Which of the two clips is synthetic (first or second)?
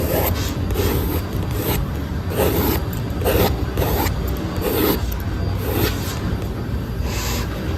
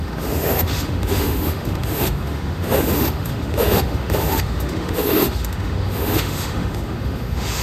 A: second